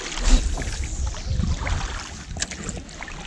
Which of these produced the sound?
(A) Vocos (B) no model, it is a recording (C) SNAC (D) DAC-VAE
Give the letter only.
B